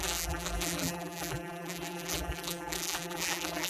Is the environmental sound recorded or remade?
remade